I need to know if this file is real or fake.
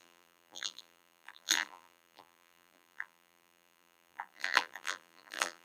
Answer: fake